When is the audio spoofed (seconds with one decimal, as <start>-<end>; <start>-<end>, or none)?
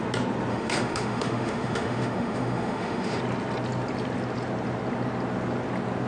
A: 0.5-3.2